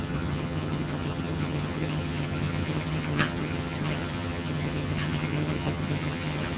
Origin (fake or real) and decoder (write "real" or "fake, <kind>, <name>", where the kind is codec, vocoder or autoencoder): fake, vocoder, HiFi-GAN